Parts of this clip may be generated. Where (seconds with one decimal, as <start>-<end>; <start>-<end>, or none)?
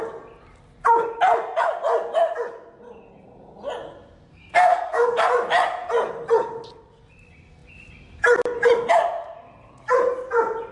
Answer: 4.3-5.2